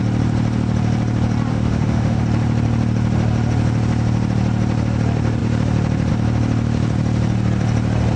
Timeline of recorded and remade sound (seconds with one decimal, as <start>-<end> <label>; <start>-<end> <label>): 0.0-1.5 recorded; 1.5-2.2 remade; 2.2-8.2 recorded